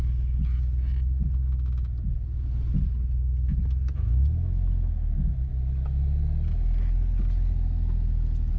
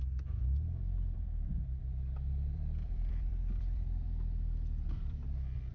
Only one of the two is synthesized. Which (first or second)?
second